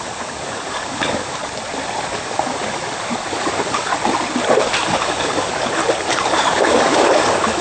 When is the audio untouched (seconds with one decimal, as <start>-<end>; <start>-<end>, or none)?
1.4-2.0; 3.9-4.6; 5.8-6.3